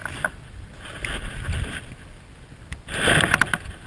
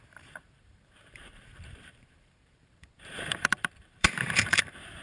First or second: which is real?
first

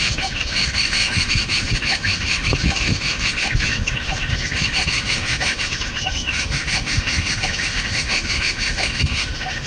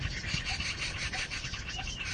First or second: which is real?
second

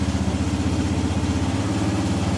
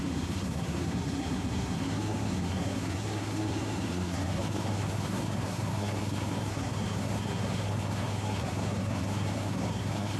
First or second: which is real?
first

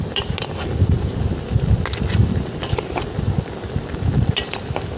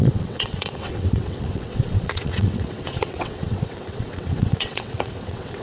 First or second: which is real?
first